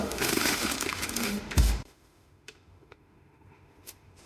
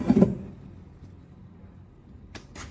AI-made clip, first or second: first